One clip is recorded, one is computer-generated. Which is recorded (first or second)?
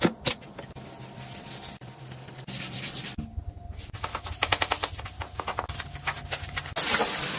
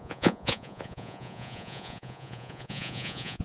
first